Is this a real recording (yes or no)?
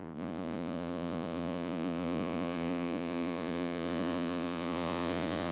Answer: no